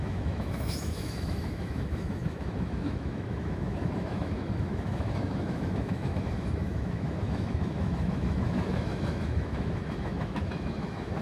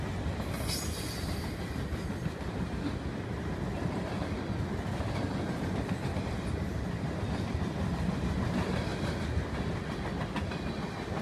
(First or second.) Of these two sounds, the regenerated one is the first